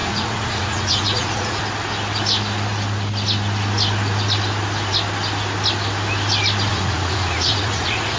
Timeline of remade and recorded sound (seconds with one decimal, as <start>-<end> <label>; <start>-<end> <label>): 0.0-1.6 remade; 1.6-6.7 recorded; 6.7-8.2 remade